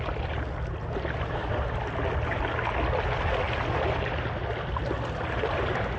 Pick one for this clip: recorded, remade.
recorded